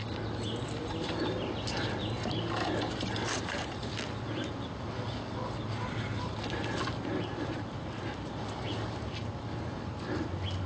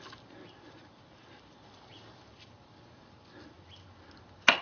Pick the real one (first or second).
first